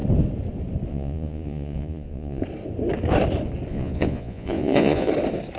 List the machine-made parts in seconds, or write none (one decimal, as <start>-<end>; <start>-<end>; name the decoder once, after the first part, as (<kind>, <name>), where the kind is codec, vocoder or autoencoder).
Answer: 0.9-2.4 (vocoder, Vocos); 3.7-5.1